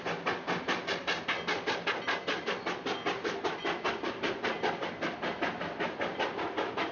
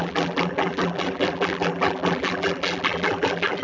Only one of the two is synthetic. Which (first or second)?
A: second